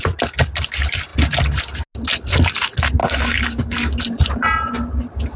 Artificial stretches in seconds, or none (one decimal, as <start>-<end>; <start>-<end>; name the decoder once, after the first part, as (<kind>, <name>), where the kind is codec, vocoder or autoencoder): 3.0-4.0 (codec, DAC)